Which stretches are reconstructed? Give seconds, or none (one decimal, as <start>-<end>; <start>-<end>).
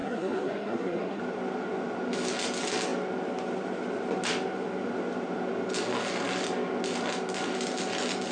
0.0-1.2